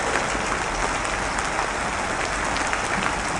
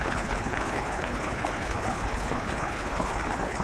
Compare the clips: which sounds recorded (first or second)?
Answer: first